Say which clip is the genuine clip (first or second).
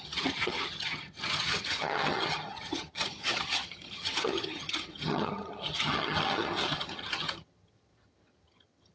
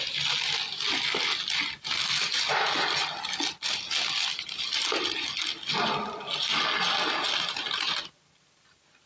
second